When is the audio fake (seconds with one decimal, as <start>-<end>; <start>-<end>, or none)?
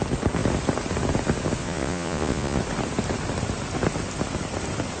1.6-2.6